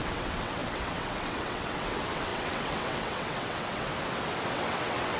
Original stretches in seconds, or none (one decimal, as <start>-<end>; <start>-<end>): 3.9-4.5

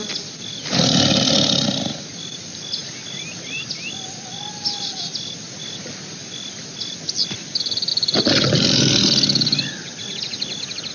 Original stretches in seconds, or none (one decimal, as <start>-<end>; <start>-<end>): 0.0-10.9

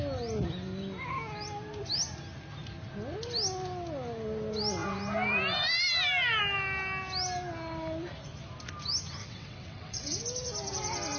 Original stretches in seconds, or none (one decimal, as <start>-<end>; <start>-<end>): 0.0-9.2; 10.2-11.2